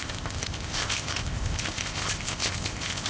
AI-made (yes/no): yes